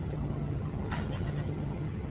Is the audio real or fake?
fake